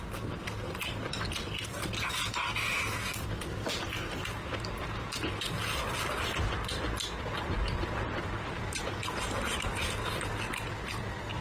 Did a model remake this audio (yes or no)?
no